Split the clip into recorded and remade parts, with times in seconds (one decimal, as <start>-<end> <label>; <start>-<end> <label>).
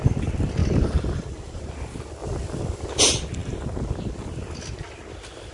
0.0-0.6 recorded; 0.6-1.6 remade; 1.6-5.5 recorded